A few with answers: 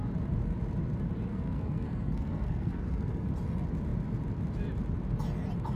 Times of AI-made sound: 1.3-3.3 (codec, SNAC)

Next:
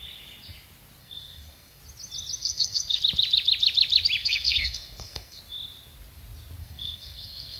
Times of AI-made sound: 1.0-1.8 (codec, SNAC); 2.4-3.0; 4.2-5.4; 6.6-7.6

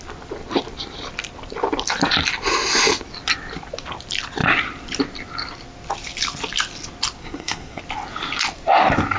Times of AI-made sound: 7.2-7.8 (codec, SNAC)

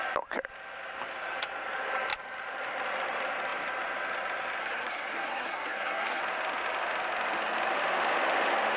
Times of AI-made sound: 4.6-6.2 (codec, SNAC)

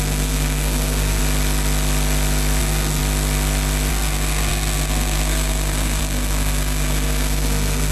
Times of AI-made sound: 0.0-1.2 (codec, SNAC); 2.6-3.0; 3.9-7.9

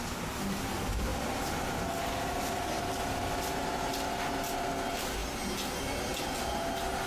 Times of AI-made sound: none

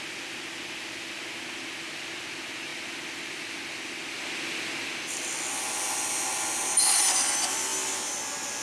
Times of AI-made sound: none